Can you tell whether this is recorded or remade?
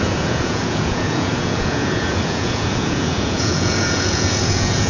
remade